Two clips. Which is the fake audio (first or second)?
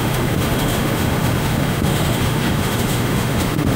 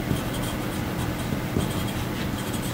first